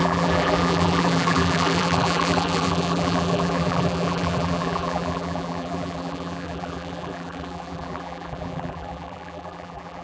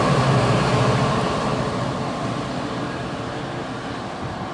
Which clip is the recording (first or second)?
second